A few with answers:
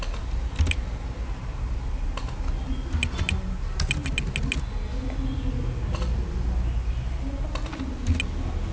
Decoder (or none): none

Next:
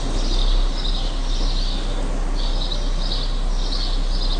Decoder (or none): none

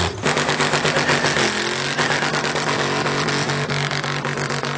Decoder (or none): none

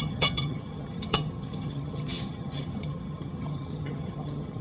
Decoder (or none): vocoder, HiFi-GAN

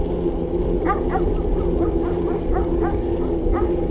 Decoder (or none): none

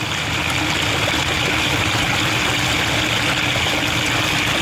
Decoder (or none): none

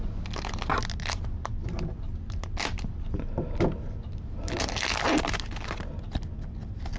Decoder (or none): none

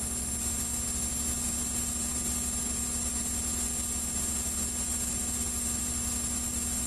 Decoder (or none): none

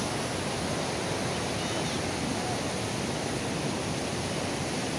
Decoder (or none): none